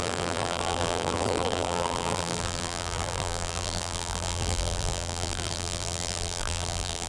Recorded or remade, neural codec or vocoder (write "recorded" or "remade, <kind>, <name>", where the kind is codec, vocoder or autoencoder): remade, vocoder, BigVGAN v2